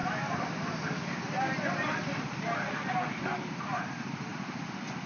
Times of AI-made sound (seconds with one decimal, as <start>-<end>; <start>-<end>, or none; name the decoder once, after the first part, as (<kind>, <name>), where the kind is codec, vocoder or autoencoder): none